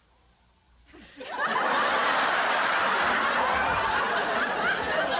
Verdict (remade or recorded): recorded